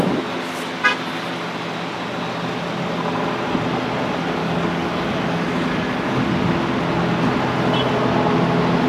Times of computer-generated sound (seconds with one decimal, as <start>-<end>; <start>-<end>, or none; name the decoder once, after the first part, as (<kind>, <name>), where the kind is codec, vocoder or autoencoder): 4.4-6.2 (codec, DAC)